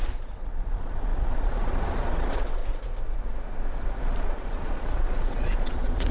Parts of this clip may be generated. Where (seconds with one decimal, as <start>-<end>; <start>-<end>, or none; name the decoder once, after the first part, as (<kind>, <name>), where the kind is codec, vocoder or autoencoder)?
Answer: 0.0-2.6 (vocoder, Vocos); 4.0-6.1